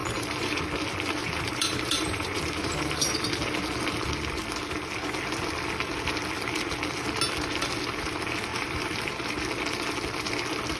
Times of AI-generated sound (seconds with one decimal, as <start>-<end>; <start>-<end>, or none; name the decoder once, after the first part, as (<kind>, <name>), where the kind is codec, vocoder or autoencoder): 0.0-0.6 (vocoder, BigVGAN v2); 1.2-3.2; 8.5-9.2